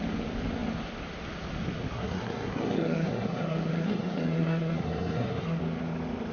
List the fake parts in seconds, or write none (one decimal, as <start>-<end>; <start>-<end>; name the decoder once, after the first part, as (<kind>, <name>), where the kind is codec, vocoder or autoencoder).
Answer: 1.9-5.6 (codec, SNAC)